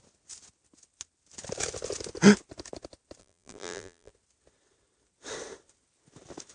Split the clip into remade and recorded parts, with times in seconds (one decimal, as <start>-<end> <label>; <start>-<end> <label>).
0.0-3.2 recorded; 3.2-4.1 remade; 4.1-6.5 recorded